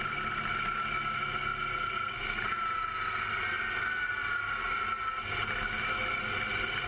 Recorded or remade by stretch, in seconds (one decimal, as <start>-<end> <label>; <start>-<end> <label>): 0.0-6.9 recorded